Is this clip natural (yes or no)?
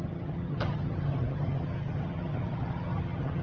no